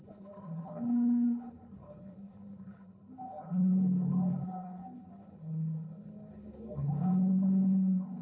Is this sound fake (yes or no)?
yes